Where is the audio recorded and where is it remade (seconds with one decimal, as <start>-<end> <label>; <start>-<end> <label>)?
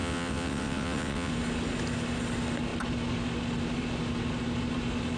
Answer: 0.0-1.3 remade; 1.3-5.2 recorded